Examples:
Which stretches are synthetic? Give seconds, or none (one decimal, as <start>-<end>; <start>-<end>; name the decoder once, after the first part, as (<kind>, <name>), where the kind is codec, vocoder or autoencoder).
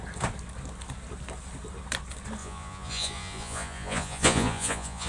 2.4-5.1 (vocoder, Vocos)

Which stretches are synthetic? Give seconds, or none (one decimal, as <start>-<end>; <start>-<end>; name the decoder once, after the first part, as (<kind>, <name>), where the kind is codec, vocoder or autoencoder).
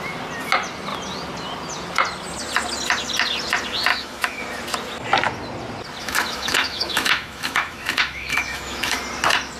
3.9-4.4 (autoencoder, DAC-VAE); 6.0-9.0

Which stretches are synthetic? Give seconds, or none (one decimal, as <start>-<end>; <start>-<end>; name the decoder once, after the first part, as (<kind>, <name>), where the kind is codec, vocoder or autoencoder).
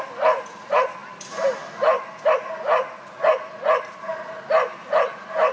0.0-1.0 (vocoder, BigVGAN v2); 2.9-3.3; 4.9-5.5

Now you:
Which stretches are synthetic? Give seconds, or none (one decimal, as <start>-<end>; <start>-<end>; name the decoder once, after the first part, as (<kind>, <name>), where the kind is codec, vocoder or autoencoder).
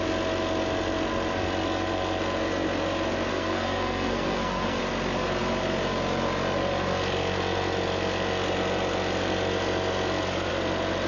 3.3-4.8 (codec, SNAC)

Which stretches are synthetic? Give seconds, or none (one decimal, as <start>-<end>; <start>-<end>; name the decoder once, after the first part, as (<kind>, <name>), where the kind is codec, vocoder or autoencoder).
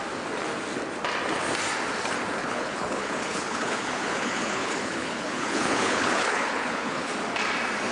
2.4-7.1 (codec, HILCodec)